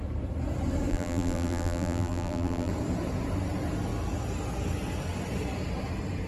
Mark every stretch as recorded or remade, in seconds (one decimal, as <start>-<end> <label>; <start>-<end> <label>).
0.0-0.9 recorded; 0.9-2.7 remade; 2.7-6.3 recorded